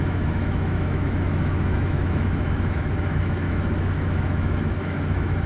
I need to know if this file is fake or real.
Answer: fake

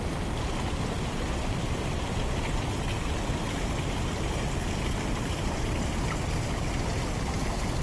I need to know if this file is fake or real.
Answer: real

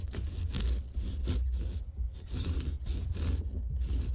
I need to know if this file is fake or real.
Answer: real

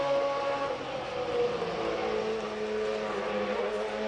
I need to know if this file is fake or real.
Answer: real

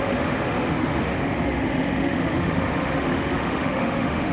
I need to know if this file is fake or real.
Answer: fake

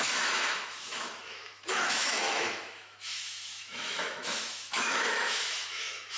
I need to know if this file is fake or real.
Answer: fake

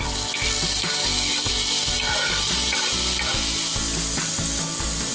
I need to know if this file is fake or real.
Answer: real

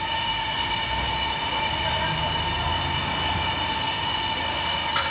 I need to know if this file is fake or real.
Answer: real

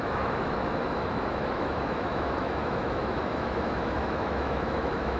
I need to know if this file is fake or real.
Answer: fake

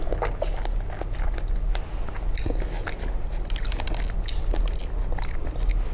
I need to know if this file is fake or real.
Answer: real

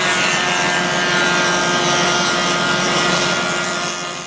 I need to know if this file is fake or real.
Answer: real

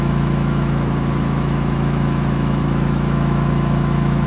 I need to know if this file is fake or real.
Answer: fake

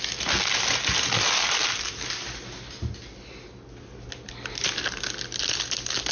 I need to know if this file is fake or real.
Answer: real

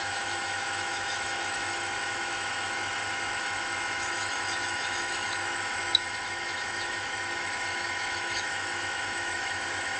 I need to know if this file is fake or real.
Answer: fake